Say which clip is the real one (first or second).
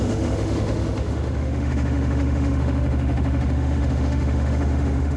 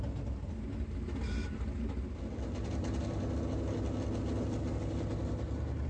second